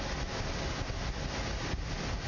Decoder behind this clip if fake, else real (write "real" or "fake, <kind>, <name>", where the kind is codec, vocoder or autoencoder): real